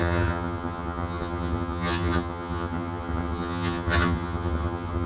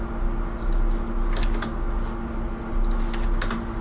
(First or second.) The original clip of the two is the second